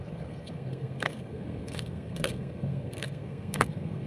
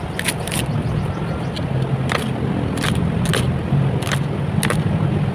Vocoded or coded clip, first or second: first